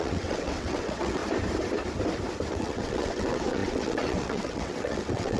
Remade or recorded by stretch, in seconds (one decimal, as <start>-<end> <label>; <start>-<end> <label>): 0.0-1.2 remade; 1.2-2.5 recorded; 2.5-5.4 remade